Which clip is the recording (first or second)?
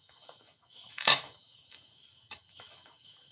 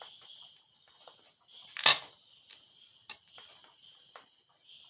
second